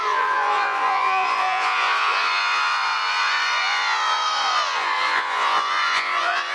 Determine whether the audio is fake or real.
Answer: fake